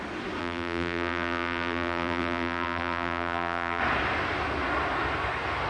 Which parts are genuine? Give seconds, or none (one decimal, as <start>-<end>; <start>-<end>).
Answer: 0.0-0.4; 3.8-5.7